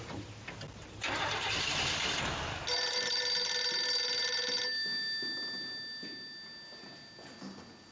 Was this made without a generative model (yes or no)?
yes